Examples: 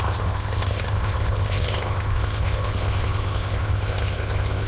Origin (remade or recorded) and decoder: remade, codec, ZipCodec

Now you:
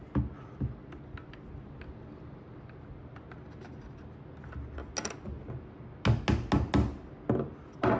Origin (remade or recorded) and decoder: recorded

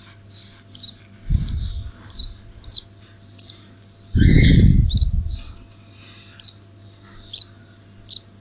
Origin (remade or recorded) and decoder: recorded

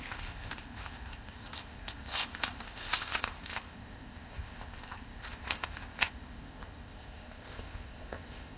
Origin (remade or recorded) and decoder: remade, codec, ZipCodec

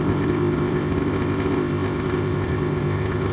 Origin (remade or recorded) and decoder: remade, codec, ZipCodec